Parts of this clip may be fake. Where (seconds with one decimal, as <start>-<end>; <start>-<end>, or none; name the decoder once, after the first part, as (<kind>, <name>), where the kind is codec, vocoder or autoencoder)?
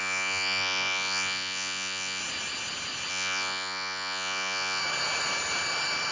0.0-2.2 (vocoder, Vocos); 3.1-4.8